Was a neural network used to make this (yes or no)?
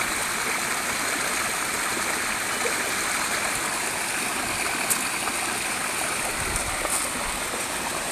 no